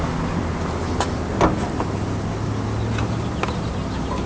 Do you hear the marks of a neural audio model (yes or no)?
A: no